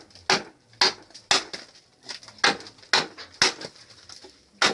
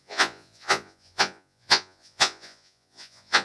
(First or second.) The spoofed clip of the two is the second